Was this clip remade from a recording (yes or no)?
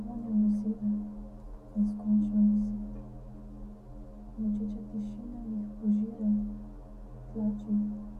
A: no